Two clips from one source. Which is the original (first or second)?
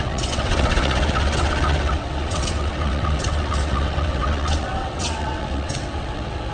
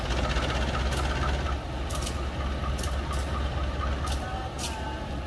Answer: second